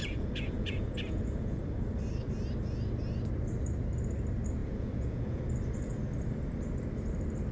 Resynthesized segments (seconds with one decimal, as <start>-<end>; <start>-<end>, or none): 0.0-1.6; 4.6-5.5